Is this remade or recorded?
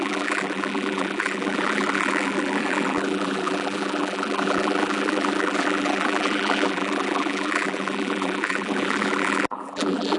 remade